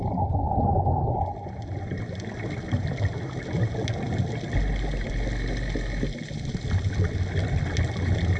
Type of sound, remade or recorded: recorded